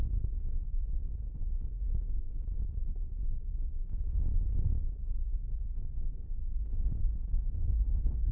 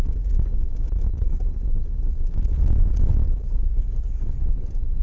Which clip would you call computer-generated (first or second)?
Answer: first